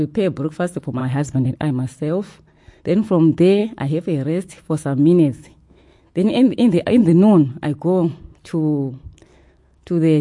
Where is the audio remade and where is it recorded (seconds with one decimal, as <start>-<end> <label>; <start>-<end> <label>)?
0.0-1.0 remade; 1.0-2.8 recorded; 2.8-7.0 remade; 7.0-9.2 recorded; 9.2-10.2 remade